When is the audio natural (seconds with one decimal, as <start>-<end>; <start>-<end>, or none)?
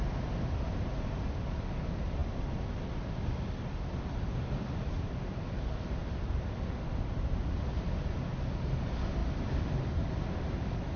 0.0-11.0